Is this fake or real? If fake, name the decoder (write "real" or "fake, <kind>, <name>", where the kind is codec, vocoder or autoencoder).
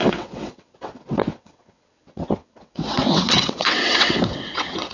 fake, vocoder, WaveNeXt